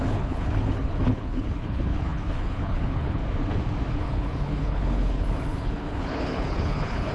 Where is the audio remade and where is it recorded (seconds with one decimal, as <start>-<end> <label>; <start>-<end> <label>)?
0.0-3.2 remade; 3.2-3.9 recorded; 3.9-7.1 remade